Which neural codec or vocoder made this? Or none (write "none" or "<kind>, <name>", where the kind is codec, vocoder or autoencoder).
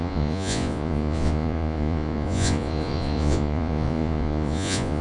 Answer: vocoder, Vocos